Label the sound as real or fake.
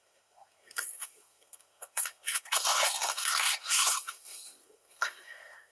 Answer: fake